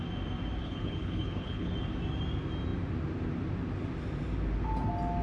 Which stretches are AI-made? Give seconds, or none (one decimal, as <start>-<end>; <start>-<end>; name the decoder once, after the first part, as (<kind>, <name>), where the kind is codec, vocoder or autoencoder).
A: 0.6-1.7 (codec, HILCodec)